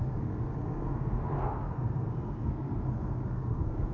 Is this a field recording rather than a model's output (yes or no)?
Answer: no